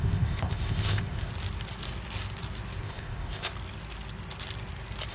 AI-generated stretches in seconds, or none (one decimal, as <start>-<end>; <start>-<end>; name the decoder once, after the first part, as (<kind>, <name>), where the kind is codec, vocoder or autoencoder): 0.0-1.3 (codec, ZipCodec); 2.8-3.5